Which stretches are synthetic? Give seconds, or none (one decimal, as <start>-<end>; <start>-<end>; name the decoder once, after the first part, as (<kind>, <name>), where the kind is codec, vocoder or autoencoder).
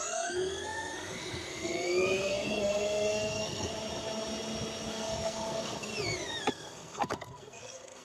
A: 0.0-3.7 (codec, SNAC); 4.9-5.9; 6.5-8.0